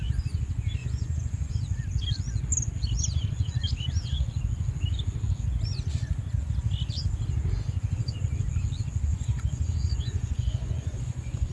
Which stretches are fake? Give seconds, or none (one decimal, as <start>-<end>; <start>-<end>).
0.8-1.5; 9.1-11.5